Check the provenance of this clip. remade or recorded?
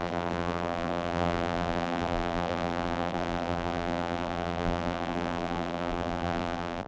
remade